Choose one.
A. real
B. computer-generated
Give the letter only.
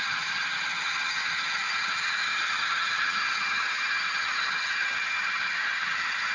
B